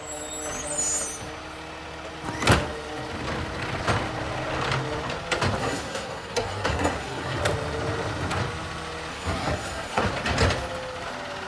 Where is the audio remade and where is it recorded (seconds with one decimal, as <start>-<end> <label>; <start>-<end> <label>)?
0.0-5.6 recorded; 5.6-7.4 remade; 7.4-9.1 recorded; 9.1-10.0 remade; 10.0-11.5 recorded